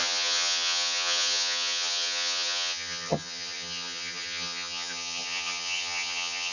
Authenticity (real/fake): fake